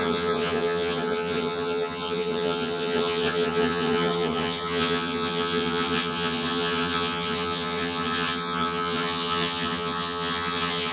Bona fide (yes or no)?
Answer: no